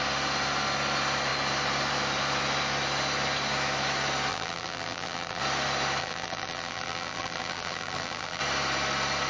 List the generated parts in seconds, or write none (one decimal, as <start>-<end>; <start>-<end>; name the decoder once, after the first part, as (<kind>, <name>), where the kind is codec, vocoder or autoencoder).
4.3-5.4 (vocoder, BigVGAN v2); 6.0-8.4